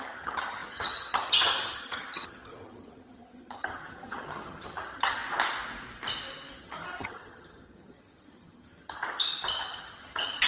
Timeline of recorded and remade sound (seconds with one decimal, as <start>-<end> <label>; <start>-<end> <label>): 0.0-5.2 remade; 5.2-6.6 recorded; 6.6-9.0 remade; 9.0-9.5 recorded; 9.5-10.5 remade

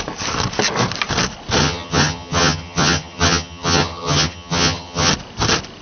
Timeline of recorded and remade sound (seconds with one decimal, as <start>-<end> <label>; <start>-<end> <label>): 0.0-1.6 recorded; 1.6-5.1 remade; 5.1-5.8 recorded

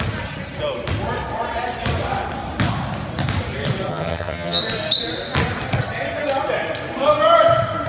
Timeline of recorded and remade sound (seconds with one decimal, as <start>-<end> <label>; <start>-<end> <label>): 0.0-3.9 recorded; 3.9-4.6 remade; 4.6-7.9 recorded

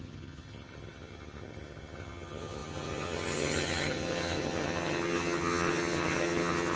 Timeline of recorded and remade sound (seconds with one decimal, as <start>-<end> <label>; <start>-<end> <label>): 0.0-6.8 remade

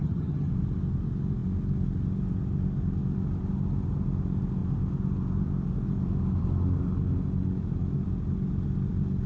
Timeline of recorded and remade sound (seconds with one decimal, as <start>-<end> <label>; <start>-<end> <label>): 0.0-0.5 remade; 0.5-9.3 recorded

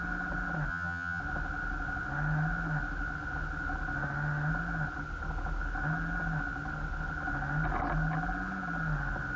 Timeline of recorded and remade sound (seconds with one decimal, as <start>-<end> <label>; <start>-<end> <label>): 0.0-0.7 recorded; 0.7-1.2 remade; 1.2-9.4 recorded

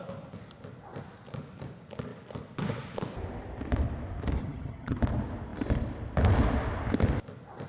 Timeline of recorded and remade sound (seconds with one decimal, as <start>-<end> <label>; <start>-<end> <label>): 0.0-4.4 recorded; 4.4-5.0 remade; 5.0-7.7 recorded

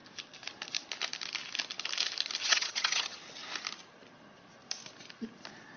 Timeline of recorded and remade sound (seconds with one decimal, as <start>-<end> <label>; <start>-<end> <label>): 0.0-2.4 recorded; 2.4-3.2 remade; 3.2-5.8 recorded